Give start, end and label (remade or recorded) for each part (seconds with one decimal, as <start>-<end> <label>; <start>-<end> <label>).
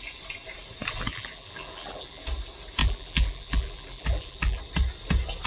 0.0-1.1 recorded; 1.1-2.2 remade; 2.2-2.8 recorded; 2.8-4.6 remade; 4.6-5.5 recorded